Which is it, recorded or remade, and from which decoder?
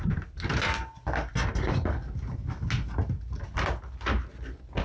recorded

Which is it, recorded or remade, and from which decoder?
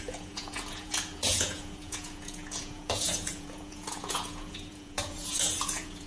remade, vocoder, Vocos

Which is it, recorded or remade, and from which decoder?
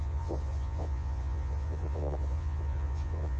remade, vocoder, Vocos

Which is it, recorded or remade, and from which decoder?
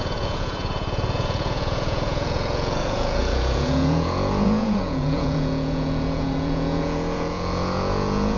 remade, vocoder, Vocos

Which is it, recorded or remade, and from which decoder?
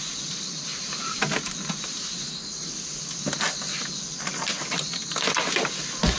recorded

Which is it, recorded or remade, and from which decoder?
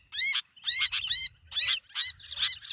recorded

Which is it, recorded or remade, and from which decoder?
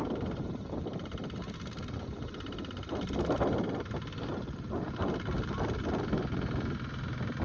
recorded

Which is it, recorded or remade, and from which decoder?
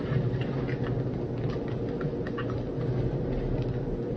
recorded